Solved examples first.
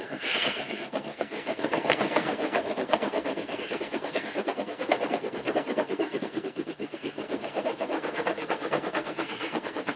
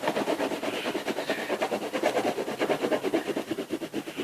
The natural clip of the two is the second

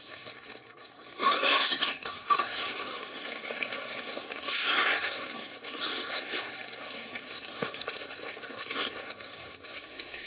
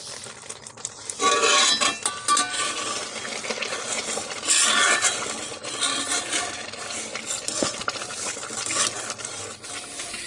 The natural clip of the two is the second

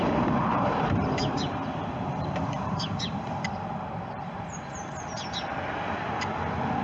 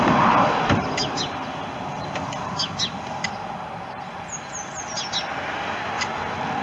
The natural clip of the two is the second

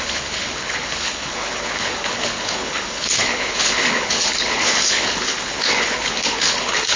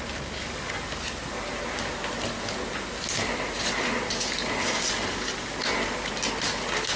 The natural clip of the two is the second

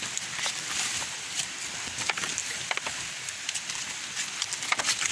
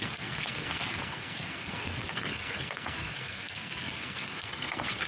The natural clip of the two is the first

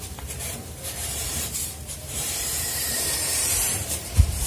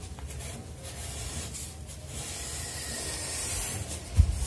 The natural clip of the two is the second